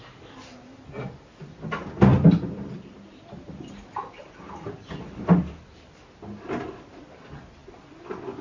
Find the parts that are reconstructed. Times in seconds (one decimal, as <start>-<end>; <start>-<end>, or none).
2.1-3.3